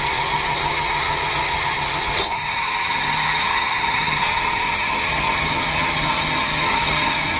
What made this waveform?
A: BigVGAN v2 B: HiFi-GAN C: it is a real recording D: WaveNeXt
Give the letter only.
B